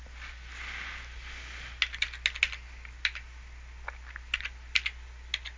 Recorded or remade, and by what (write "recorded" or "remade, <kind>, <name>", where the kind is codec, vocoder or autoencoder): recorded